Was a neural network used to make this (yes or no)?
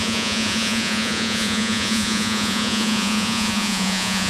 yes